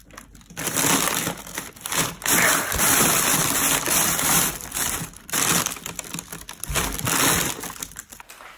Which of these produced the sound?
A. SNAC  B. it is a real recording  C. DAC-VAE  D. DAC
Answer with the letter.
B